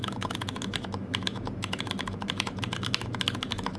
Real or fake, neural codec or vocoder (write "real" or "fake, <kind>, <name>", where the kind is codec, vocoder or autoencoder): fake, autoencoder, DAC-VAE